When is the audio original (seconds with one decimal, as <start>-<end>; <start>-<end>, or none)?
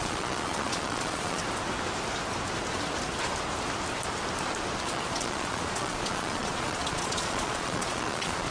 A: 1.4-4.8